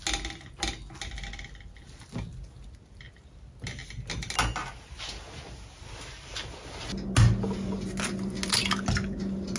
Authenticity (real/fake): real